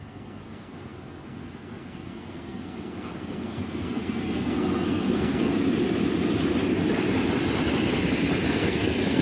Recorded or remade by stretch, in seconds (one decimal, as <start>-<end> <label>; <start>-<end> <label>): 0.0-5.5 remade; 5.5-8.5 recorded; 8.5-9.2 remade